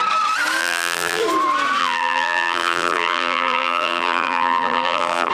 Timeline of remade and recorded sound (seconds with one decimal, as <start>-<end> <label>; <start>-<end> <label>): 0.0-0.6 recorded; 0.6-1.2 remade; 1.2-1.8 recorded; 1.8-5.3 remade

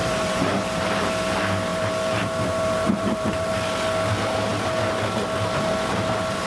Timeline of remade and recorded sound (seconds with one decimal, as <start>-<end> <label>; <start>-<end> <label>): 0.0-1.1 remade; 1.1-1.7 recorded; 1.7-3.5 remade; 3.5-6.5 recorded

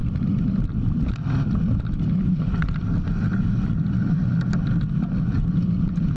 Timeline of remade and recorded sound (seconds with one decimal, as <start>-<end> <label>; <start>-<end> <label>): 0.0-6.2 recorded

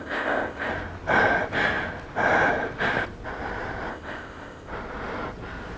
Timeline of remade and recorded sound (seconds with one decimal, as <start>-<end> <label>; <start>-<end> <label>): 0.0-0.7 remade; 0.7-3.9 recorded; 3.9-4.7 remade; 4.7-5.8 recorded

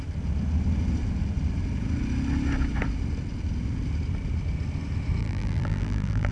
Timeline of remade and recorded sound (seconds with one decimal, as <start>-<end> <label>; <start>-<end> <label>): 0.0-5.2 recorded; 5.2-6.3 remade

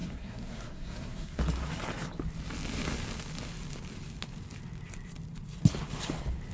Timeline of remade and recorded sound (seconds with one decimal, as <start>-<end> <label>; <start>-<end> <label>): 0.0-1.4 remade; 1.4-6.5 recorded